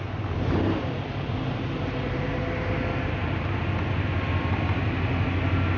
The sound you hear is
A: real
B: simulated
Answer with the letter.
A